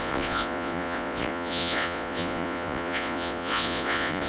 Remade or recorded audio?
remade